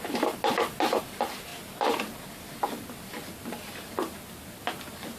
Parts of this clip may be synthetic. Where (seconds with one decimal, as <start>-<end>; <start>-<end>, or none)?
1.5-2.1